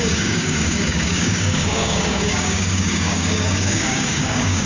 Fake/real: fake